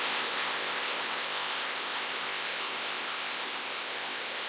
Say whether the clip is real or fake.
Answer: fake